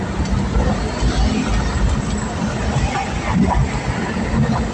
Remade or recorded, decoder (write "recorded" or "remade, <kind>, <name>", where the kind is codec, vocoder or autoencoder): recorded